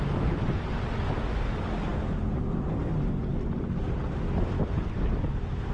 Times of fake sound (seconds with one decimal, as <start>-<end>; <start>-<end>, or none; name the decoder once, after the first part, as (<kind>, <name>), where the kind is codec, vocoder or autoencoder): none